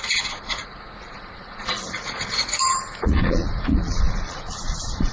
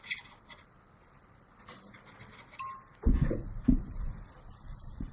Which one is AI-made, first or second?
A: first